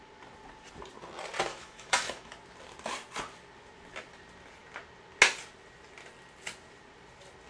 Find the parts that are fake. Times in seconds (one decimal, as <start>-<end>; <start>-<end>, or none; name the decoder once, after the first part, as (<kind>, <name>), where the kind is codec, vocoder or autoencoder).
1.5-2.3 (autoencoder, DAC-VAE)